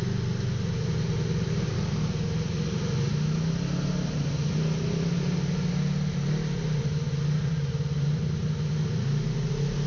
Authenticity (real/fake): real